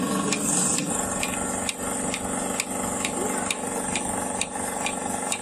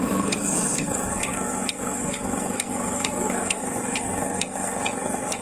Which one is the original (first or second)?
first